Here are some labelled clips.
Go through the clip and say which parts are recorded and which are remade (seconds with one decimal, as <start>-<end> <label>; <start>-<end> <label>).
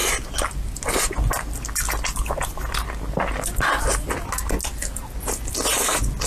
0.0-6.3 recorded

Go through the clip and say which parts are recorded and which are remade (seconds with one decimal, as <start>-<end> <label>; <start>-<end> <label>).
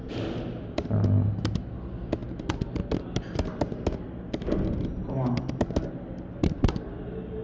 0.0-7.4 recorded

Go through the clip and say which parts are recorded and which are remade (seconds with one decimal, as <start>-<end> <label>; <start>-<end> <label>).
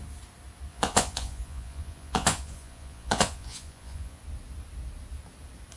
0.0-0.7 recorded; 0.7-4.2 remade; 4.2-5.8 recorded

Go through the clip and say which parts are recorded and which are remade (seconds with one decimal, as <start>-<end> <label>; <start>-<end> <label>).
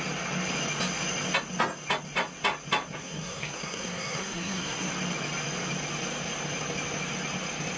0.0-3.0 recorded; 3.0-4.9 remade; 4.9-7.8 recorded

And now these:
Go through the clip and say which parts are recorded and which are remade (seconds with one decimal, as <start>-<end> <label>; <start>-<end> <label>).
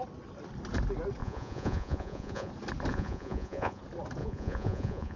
0.0-1.2 recorded; 1.2-2.5 remade; 2.5-2.9 recorded; 2.9-3.8 remade; 3.8-4.2 recorded; 4.2-5.2 remade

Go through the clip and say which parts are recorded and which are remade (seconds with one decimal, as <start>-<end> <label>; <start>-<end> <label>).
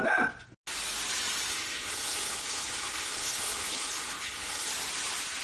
0.0-1.5 recorded; 1.5-4.7 remade; 4.7-5.4 recorded